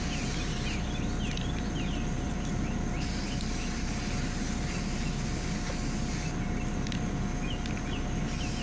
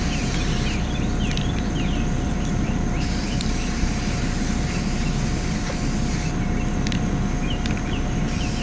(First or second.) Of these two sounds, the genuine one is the first